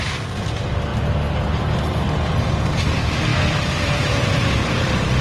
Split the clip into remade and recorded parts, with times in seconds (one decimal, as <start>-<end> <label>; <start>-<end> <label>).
0.0-0.9 remade; 0.9-2.7 recorded; 2.7-5.2 remade